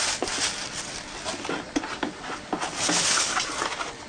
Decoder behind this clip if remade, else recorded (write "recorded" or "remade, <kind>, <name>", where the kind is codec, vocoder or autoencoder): recorded